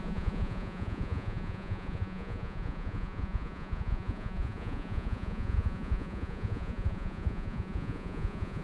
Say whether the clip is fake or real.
fake